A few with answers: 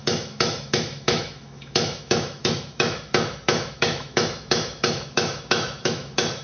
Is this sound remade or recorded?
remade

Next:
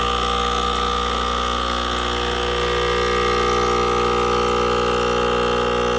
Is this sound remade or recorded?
recorded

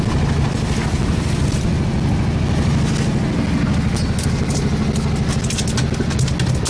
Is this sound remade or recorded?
recorded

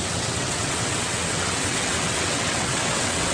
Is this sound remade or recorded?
remade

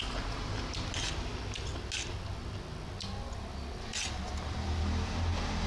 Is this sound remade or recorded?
recorded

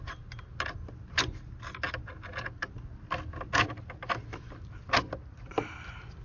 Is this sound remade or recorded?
recorded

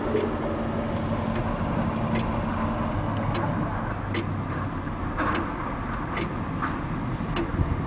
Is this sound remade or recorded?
recorded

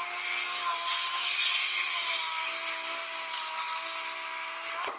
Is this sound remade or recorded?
recorded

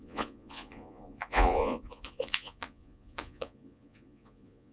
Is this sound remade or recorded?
remade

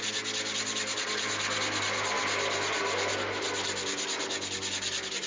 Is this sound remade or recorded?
recorded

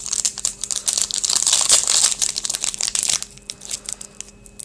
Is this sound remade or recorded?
recorded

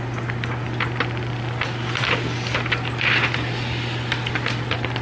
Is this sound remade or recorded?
recorded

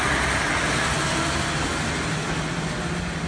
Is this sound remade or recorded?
recorded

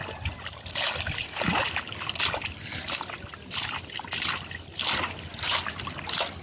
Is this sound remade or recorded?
recorded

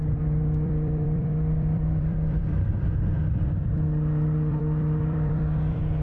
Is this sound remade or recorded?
remade